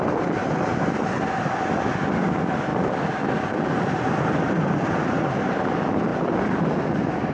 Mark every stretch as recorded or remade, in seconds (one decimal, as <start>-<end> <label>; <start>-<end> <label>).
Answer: 0.0-7.3 recorded